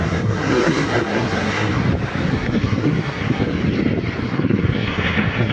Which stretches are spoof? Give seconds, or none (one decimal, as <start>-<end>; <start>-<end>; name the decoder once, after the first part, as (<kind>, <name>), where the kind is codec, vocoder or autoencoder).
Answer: 0.0-1.8 (codec, SNAC); 2.3-3.6; 4.2-5.5